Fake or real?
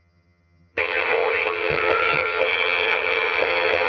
fake